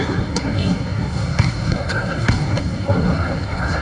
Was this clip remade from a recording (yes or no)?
yes